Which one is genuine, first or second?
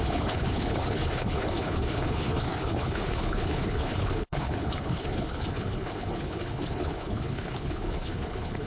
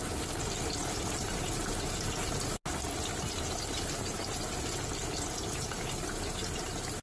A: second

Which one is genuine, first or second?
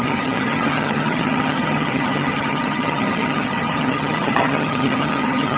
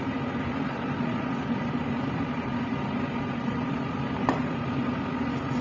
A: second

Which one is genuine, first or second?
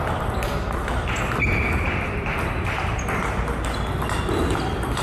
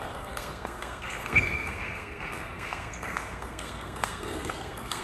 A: first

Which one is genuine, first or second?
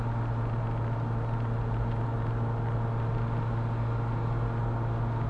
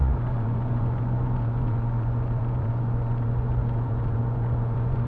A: first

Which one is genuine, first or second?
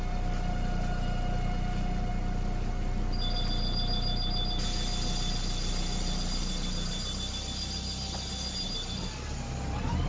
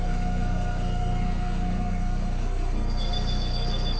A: first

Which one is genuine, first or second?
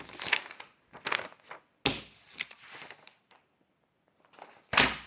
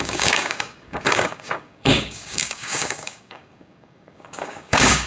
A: first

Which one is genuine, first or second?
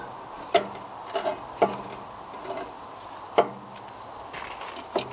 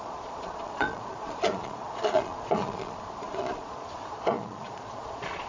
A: first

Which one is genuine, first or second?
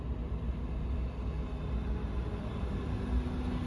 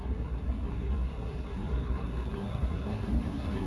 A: first